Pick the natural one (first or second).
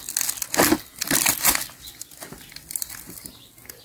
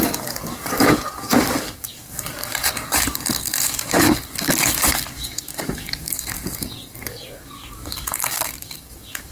first